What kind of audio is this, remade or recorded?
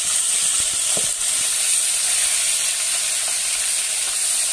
recorded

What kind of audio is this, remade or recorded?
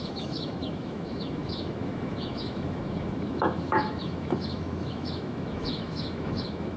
remade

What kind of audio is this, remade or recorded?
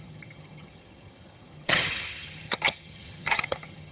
remade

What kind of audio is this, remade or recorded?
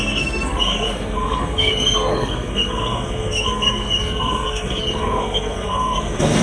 remade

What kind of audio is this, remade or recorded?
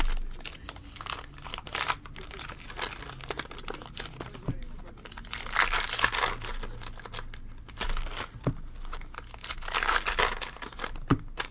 recorded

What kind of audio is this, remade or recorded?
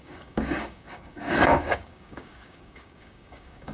remade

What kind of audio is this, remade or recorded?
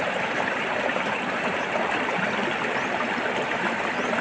recorded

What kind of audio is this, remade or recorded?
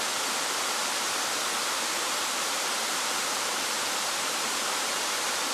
remade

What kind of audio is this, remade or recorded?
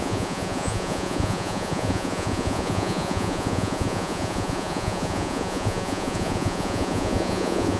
remade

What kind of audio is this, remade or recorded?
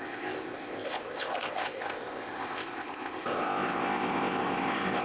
remade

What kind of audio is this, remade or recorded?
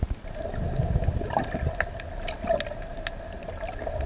recorded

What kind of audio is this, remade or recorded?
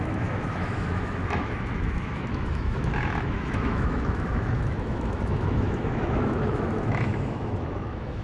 remade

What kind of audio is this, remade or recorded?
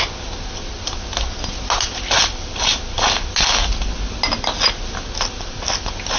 recorded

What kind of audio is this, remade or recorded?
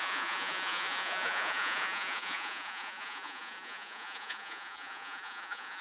remade